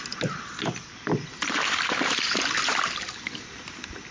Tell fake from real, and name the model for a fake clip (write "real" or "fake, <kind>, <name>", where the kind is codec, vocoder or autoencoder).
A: real